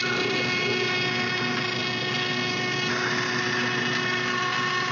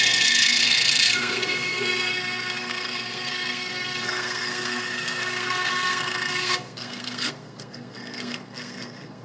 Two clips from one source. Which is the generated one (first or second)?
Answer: second